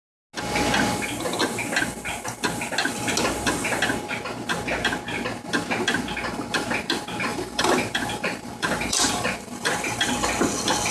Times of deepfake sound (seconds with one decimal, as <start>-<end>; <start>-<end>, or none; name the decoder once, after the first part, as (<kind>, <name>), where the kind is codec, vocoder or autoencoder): 7.3-10.1 (vocoder, BigVGAN v2)